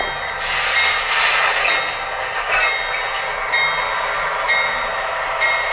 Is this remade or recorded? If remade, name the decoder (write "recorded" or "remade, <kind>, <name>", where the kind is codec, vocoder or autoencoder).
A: recorded